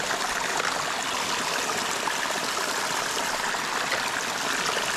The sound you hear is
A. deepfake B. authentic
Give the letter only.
B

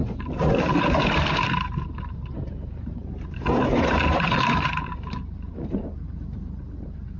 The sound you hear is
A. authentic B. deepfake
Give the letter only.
B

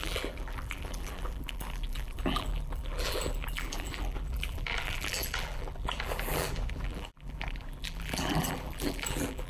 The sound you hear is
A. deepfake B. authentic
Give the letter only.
A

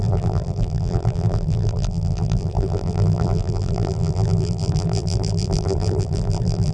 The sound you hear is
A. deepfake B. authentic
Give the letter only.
A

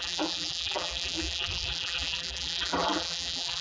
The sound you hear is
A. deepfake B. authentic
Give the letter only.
A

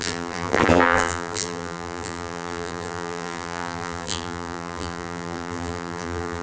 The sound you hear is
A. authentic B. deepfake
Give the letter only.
B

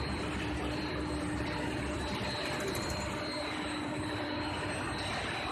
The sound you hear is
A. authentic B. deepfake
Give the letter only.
B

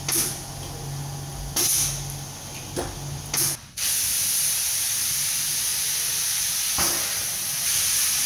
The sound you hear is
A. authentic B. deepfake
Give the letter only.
A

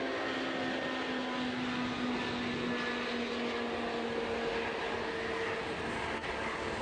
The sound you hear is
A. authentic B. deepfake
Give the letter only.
A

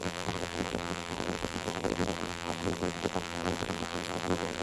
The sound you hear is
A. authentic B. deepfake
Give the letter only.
B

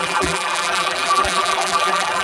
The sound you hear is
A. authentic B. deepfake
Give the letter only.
B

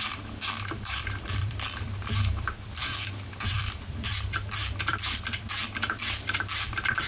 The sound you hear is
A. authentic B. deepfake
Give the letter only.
B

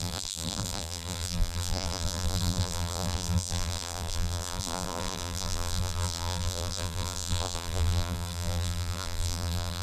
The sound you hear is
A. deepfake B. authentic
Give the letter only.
A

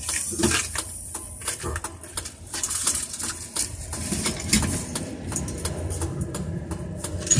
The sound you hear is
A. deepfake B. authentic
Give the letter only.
A